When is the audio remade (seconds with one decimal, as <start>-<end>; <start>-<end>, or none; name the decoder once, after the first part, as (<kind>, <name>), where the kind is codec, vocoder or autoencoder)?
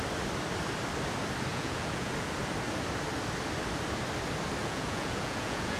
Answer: 1.5-2.1 (vocoder, Vocos); 4.6-5.8